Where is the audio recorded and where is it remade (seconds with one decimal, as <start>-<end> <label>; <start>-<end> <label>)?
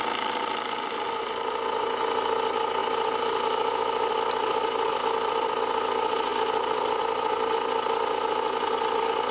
0.0-2.8 recorded; 2.8-4.1 remade; 4.1-9.3 recorded